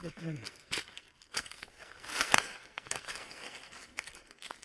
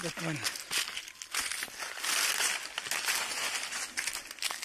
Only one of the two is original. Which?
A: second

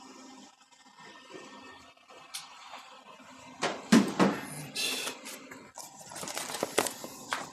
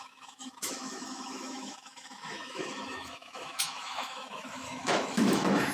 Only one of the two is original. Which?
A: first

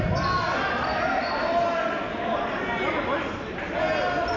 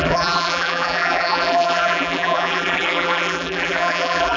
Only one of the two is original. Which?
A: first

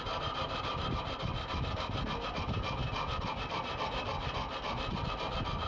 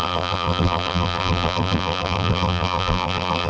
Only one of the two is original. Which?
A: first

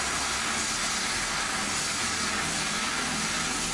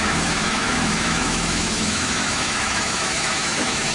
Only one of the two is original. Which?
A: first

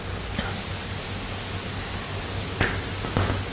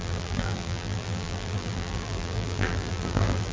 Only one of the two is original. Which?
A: first